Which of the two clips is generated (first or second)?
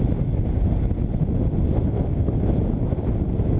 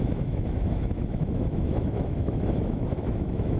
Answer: second